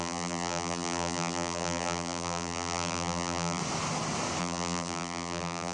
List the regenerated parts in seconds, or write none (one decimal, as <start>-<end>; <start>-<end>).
0.0-3.6; 4.4-5.7